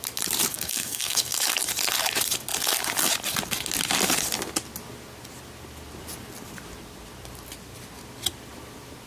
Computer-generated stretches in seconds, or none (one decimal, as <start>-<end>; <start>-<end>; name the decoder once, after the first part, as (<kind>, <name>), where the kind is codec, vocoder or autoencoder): 0.5-1.4 (codec, SNAC)